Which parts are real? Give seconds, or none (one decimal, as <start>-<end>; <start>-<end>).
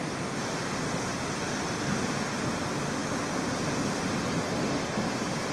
0.0-5.5